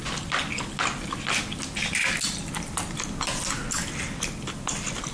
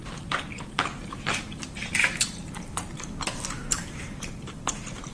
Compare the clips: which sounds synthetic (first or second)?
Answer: second